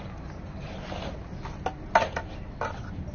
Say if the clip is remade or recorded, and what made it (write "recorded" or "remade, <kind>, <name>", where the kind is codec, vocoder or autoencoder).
recorded